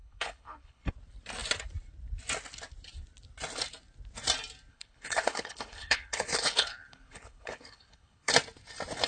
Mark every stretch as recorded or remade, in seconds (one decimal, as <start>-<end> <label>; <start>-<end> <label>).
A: 0.0-0.9 remade; 0.9-4.7 recorded; 4.7-8.3 remade; 8.3-9.1 recorded

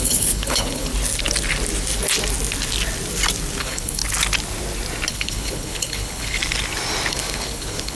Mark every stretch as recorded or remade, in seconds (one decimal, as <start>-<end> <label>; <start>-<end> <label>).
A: 0.0-0.9 remade; 0.9-3.6 recorded; 3.6-4.0 remade; 4.0-5.1 recorded; 5.1-6.4 remade; 6.4-7.1 recorded; 7.1-7.9 remade

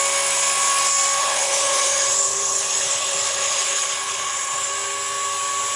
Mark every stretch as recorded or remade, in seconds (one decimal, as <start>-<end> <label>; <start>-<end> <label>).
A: 0.0-1.2 recorded; 1.2-4.7 remade; 4.7-5.8 recorded